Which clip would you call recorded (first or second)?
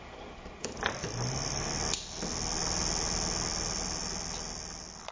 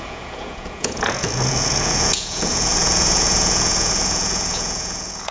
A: first